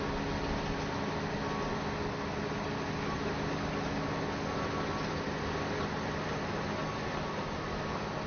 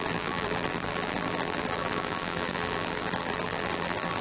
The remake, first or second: second